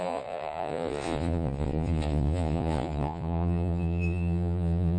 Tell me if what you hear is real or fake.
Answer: fake